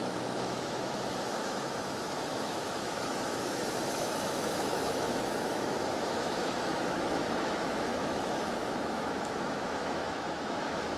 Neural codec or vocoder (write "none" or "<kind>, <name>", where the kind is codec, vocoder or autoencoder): autoencoder, DAC-VAE